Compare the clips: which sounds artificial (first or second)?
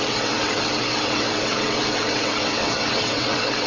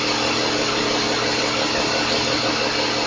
first